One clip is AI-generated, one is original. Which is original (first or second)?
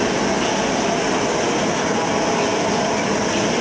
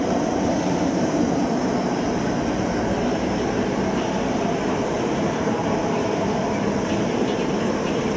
first